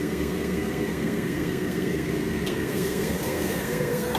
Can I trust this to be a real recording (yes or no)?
no